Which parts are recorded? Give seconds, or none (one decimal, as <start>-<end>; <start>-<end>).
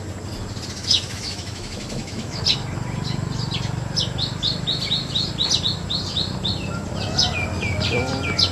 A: 0.0-0.8; 2.4-8.5